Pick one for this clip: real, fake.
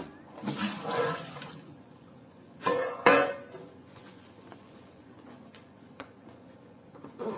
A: fake